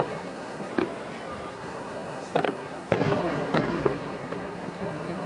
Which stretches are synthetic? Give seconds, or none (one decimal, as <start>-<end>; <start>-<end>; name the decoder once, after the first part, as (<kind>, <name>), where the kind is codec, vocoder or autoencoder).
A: 0.0-0.7 (codec, SNAC); 1.5-5.3